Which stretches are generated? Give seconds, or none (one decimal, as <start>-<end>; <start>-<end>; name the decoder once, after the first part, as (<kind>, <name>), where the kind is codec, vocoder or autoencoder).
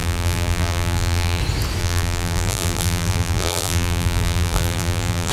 0.0-1.4 (vocoder, BigVGAN v2); 1.8-5.3